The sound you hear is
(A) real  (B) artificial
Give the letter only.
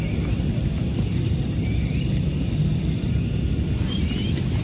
A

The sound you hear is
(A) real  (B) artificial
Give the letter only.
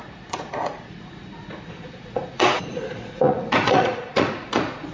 B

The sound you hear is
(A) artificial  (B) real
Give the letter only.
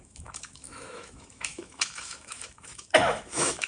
A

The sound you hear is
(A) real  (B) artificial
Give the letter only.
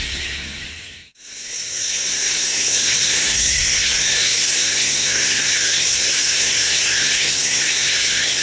B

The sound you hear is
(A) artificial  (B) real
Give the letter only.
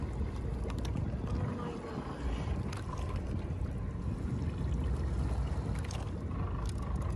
B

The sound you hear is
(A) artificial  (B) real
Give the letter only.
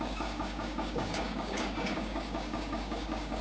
A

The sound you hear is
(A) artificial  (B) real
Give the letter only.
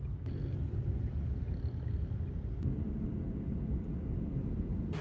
B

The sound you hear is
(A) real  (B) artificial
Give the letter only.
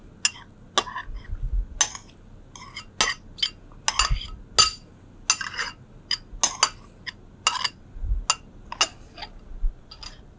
A